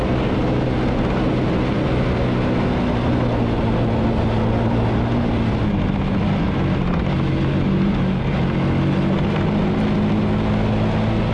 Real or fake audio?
real